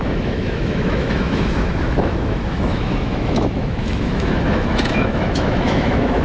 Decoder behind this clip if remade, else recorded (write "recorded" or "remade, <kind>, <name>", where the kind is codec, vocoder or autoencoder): remade, autoencoder, DAC-VAE